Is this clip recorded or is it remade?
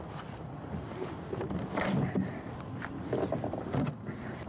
remade